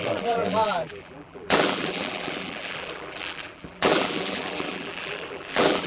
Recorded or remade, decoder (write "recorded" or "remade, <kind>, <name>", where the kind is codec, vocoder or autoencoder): remade, vocoder, BigVGAN v2